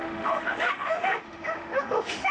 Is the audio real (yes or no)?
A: no